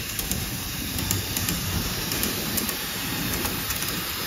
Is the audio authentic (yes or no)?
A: no